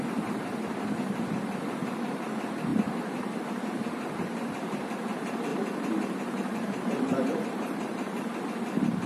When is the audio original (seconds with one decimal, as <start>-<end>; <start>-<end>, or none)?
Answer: 0.0-5.5; 8.4-9.1